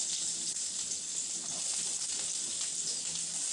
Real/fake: real